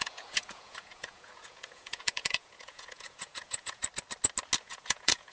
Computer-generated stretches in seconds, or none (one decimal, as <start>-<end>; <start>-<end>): 0.0-3.8; 4.6-5.3